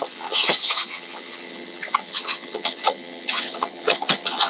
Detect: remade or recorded remade